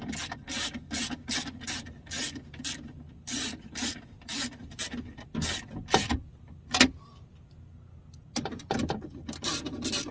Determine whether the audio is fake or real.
real